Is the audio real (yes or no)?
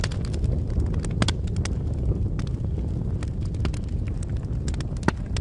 yes